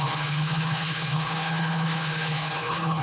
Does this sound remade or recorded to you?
remade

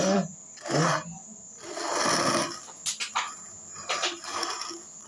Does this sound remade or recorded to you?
recorded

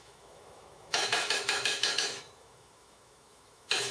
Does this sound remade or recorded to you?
remade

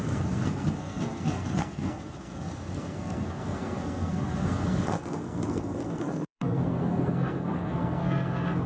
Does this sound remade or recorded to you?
remade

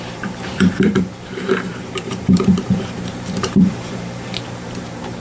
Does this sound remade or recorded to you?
remade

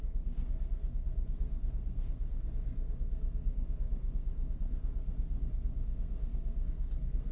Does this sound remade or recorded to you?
remade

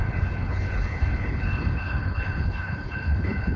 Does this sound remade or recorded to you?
remade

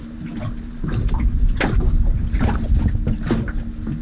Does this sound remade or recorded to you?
recorded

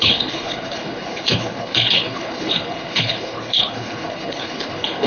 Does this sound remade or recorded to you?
remade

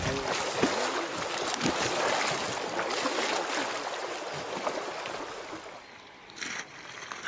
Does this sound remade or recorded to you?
recorded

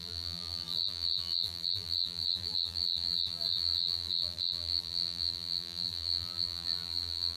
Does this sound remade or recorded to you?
remade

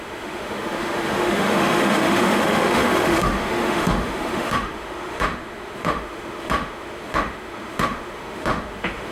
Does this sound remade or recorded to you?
remade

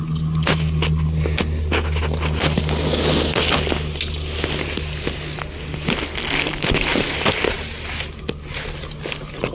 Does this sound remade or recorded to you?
recorded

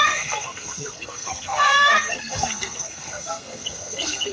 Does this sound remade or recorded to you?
remade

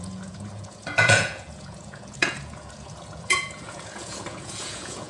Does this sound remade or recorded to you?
remade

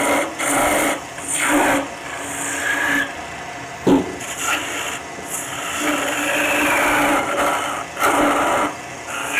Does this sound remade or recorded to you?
recorded